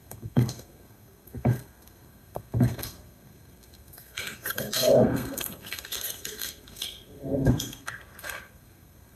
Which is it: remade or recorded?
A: remade